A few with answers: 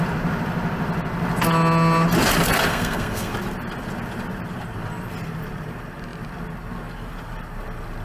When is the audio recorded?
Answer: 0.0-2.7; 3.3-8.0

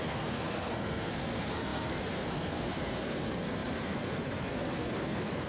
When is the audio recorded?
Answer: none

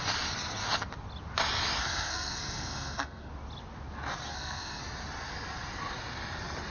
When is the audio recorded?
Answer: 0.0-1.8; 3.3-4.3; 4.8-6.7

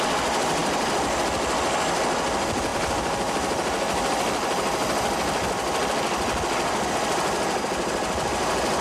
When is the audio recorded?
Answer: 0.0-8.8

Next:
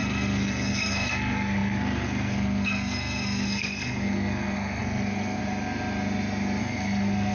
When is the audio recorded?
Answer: 5.4-6.6